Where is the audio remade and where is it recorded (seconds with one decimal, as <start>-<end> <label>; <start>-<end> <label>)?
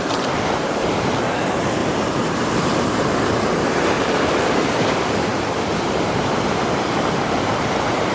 0.0-8.1 remade